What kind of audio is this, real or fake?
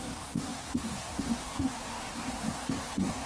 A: fake